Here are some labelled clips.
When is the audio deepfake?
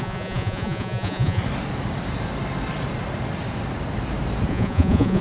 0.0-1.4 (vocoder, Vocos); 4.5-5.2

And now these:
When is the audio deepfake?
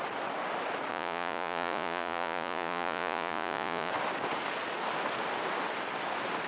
0.9-3.9 (vocoder, Vocos)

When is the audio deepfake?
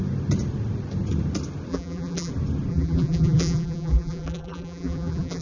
1.7-2.3 (vocoder, BigVGAN v2); 2.7-5.4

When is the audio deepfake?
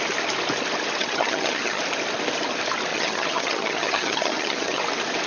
1.0-1.8 (vocoder, HiFi-GAN); 2.9-4.8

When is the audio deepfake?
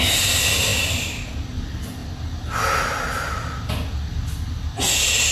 0.7-1.6 (vocoder, BigVGAN v2)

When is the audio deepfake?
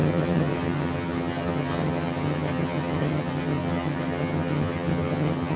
0.0-5.6 (vocoder, HiFi-GAN)